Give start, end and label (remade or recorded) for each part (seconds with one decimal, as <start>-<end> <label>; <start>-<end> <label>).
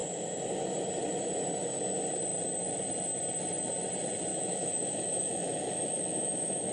0.0-4.3 recorded; 4.3-6.7 remade